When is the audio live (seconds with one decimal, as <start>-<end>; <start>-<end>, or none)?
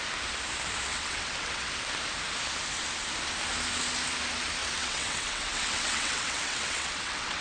0.0-0.9; 1.7-4.6